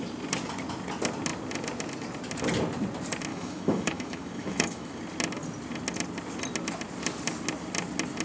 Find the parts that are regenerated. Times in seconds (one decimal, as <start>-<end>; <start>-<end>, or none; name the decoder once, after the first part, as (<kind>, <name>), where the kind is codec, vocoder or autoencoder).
3.3-5.0 (autoencoder, DAC-VAE)